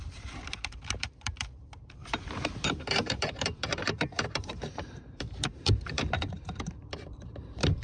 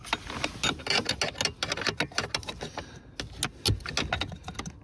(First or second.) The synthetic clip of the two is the first